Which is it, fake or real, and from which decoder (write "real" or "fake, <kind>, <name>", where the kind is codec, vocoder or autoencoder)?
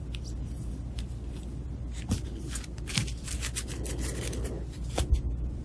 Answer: real